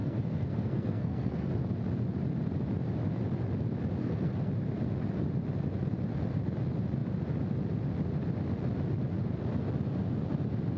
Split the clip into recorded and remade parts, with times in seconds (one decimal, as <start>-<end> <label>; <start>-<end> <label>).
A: 0.0-1.5 remade; 1.5-4.0 recorded; 4.0-4.5 remade; 4.5-10.8 recorded